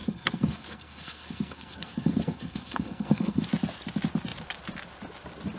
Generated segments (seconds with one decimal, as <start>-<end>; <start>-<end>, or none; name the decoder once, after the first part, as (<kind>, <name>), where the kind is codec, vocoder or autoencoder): 0.0-3.4 (codec, SNAC)